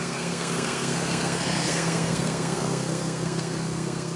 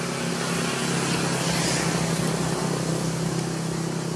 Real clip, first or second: second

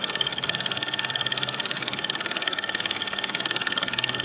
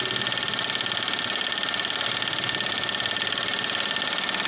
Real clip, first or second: second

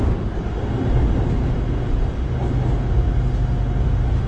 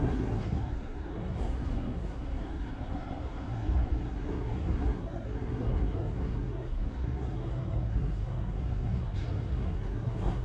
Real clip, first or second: first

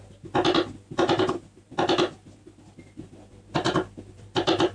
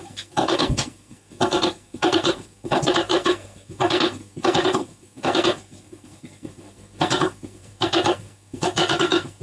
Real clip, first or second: first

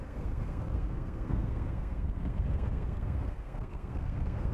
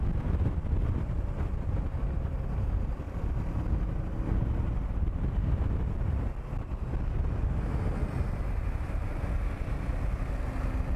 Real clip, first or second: second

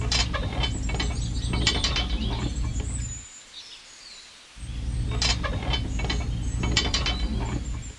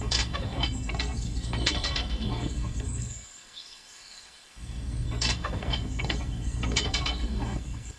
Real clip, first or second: first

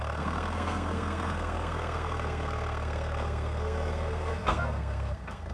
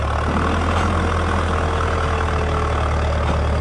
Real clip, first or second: second